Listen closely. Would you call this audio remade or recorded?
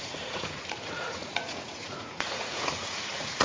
remade